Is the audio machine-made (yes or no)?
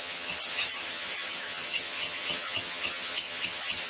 yes